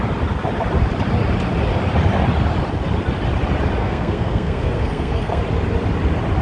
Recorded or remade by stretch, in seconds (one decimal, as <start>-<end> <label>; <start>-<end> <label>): 0.0-3.8 recorded; 3.8-5.4 remade; 5.4-6.4 recorded